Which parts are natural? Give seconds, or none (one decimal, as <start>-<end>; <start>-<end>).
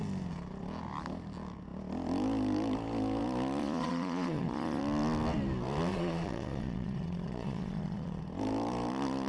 0.0-3.6; 4.8-5.9; 8.2-9.3